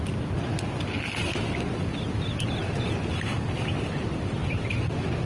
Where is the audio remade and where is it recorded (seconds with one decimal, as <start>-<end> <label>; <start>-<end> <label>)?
0.0-5.3 recorded